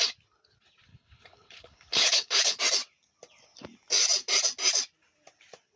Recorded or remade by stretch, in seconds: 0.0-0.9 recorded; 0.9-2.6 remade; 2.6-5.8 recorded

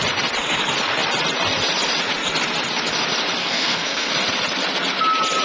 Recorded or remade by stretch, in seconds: 0.0-3.4 recorded; 3.4-4.1 remade; 4.1-5.4 recorded

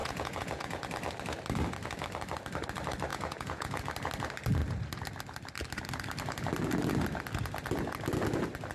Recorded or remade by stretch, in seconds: 0.0-0.8 remade; 0.8-3.1 recorded; 3.1-3.8 remade; 3.8-8.7 recorded

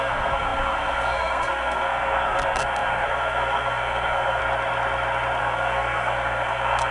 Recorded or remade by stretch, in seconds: 0.0-4.4 remade; 4.4-5.4 recorded; 5.4-6.9 remade

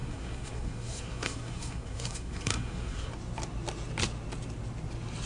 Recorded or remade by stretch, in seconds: 0.0-3.1 remade; 3.1-5.3 recorded